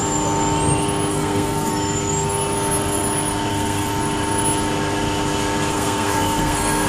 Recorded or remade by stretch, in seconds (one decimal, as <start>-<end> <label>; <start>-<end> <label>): 0.0-1.1 recorded; 1.1-1.7 remade; 1.7-3.5 recorded; 3.5-3.9 remade; 3.9-5.7 recorded; 5.7-6.9 remade